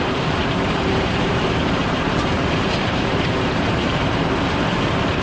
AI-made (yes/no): yes